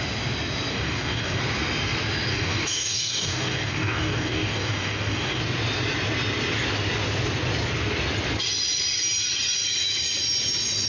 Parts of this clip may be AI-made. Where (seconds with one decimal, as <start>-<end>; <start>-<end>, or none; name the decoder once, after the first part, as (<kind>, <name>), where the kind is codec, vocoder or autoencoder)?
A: 0.7-1.4 (codec, DAC); 2.3-5.4